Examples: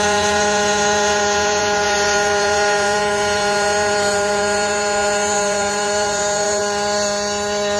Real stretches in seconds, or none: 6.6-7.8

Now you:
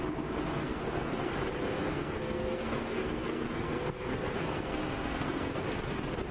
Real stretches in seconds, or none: 0.0-0.6; 1.3-1.8; 5.6-6.3

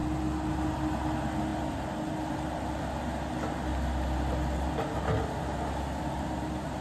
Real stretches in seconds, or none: 0.0-6.8

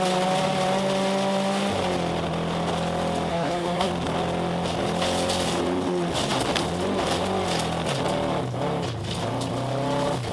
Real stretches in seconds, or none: 0.0-3.3; 3.9-10.3

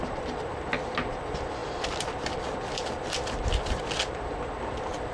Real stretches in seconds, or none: 0.0-5.1

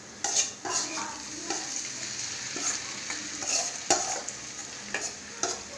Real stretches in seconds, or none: 0.0-5.8